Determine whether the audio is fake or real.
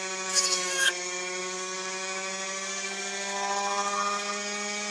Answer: fake